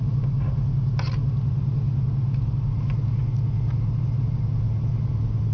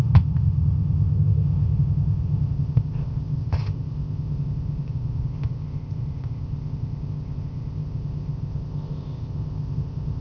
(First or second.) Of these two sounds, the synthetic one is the second